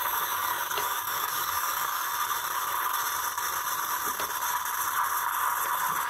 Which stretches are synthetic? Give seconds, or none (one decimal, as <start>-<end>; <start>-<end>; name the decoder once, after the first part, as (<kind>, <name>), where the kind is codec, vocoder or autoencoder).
0.0-2.1 (codec, DAC)